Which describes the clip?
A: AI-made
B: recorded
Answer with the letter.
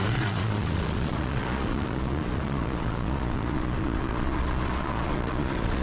A